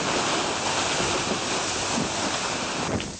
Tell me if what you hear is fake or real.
real